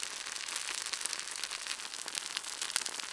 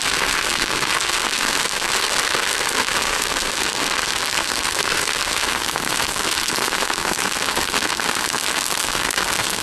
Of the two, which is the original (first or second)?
first